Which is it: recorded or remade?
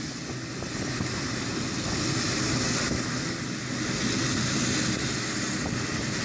recorded